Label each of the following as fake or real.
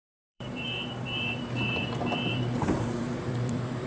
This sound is fake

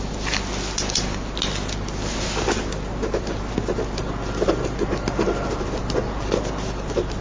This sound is real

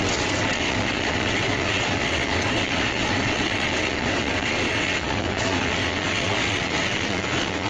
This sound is fake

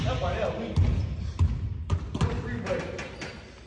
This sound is real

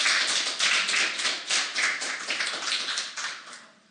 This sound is real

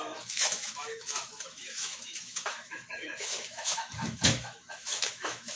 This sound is fake